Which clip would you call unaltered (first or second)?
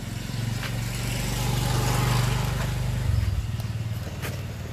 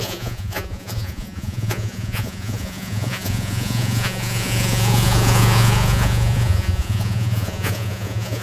first